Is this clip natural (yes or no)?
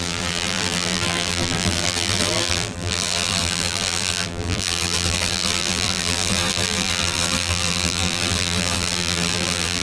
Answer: no